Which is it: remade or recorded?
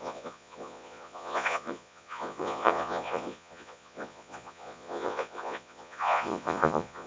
remade